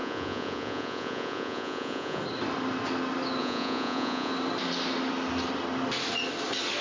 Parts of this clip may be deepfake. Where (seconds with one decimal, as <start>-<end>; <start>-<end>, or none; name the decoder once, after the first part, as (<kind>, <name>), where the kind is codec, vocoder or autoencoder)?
0.0-2.2 (vocoder, Vocos); 3.4-4.3